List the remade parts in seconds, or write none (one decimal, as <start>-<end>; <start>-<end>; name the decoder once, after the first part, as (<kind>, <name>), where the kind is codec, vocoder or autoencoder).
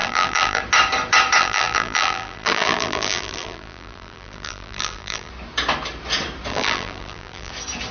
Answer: 0.0-0.6 (vocoder, BigVGAN v2); 1.4-5.3; 6.5-7.5